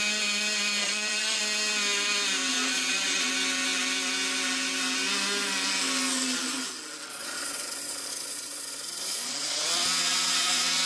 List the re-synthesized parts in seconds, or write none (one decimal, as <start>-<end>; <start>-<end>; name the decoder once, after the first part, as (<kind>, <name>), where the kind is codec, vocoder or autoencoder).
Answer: 0.8-1.4 (vocoder, Vocos); 2.5-3.3; 7.1-10.9